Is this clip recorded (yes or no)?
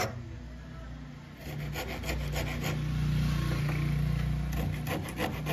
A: yes